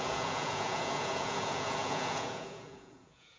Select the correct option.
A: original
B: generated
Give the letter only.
B